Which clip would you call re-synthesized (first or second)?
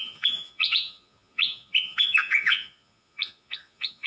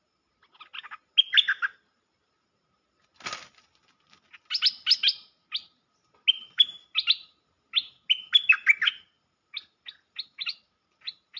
first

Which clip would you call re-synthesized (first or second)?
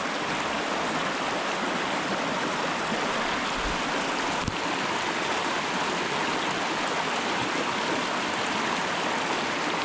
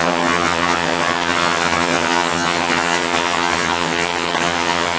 second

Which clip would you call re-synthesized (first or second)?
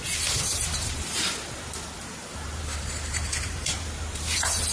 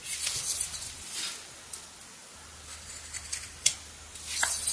first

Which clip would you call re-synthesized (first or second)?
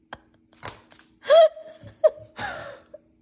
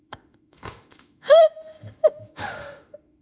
second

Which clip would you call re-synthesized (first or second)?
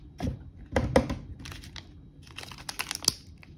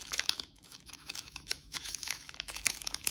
second